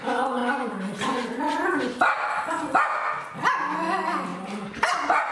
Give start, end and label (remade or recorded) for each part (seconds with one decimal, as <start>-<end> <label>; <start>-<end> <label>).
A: 0.0-5.3 recorded

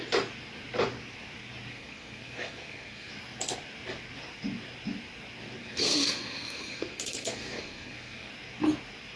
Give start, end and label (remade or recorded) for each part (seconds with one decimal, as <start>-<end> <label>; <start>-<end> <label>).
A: 0.0-1.7 recorded; 1.7-3.1 remade; 3.1-5.6 recorded; 5.6-8.3 remade; 8.3-9.2 recorded

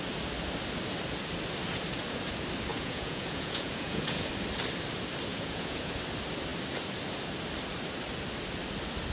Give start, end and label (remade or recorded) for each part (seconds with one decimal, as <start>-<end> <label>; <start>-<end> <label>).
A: 0.0-2.7 recorded; 2.7-4.3 remade; 4.3-5.3 recorded; 5.3-5.9 remade; 5.9-9.1 recorded